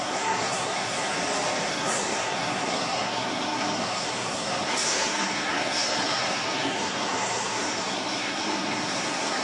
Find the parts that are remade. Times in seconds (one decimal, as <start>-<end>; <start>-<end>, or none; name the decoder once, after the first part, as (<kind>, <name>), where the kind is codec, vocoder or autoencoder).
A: 0.0-1.1 (codec, SNAC); 1.7-9.4